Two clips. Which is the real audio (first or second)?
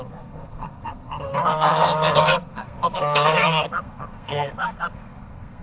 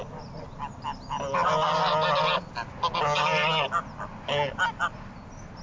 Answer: second